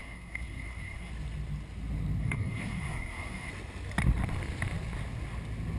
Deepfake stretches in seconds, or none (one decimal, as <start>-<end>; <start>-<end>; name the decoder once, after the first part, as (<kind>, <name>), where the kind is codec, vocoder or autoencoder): 0.0-1.1 (codec, SNAC); 2.2-3.5